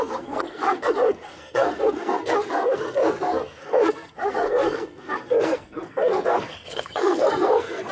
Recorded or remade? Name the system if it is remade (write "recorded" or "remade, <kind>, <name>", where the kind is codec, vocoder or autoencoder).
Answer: remade, codec, SNAC